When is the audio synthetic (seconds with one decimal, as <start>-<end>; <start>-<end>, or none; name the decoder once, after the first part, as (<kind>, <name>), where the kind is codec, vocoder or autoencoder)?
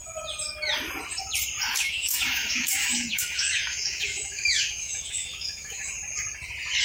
1.8-5.9 (autoencoder, DAC-VAE)